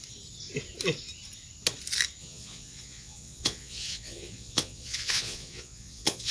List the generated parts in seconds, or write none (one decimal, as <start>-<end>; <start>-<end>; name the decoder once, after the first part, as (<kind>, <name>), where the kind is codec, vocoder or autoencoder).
2.2-6.3 (vocoder, Vocos)